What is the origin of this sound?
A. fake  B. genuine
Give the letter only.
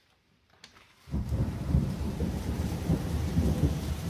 A